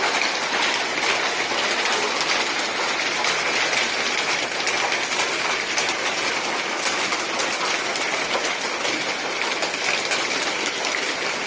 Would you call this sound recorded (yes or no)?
no